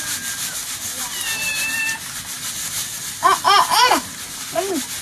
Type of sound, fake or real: real